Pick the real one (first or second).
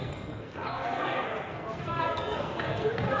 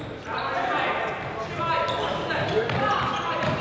second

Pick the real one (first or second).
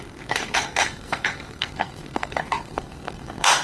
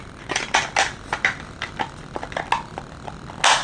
second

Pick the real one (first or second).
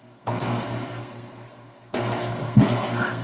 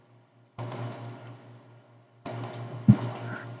second